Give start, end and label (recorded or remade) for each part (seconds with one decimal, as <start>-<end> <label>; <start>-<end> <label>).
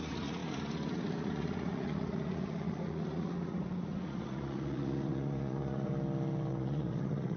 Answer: 0.0-5.9 remade; 5.9-6.5 recorded; 6.5-7.4 remade